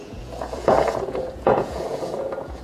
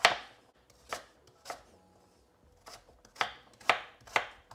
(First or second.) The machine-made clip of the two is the first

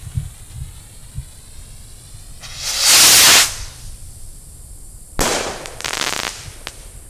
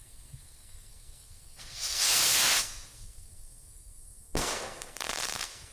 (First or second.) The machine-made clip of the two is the second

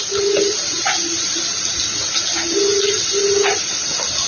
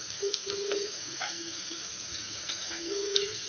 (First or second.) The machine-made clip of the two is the second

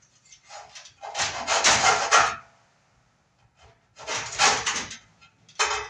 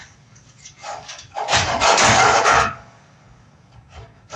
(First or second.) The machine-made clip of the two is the second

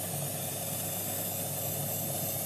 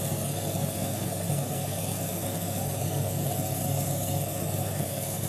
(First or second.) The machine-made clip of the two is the second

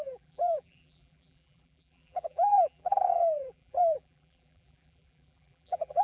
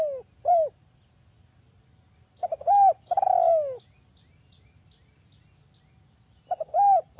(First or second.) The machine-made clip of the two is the first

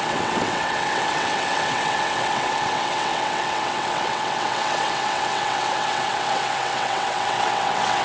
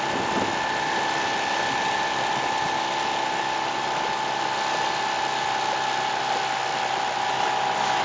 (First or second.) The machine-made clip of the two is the first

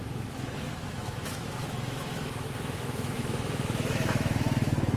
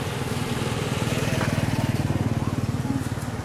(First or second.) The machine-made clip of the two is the first